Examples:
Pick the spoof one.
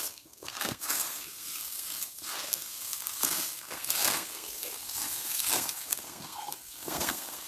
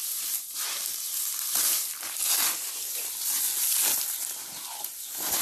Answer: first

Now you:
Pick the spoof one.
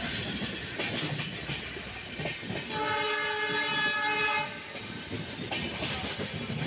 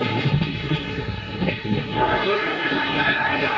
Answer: second